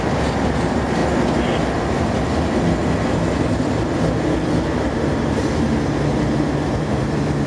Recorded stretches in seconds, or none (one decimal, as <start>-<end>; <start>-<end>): 1.0-4.6